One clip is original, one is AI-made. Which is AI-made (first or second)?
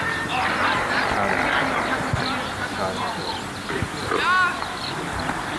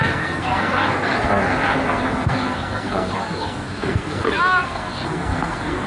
second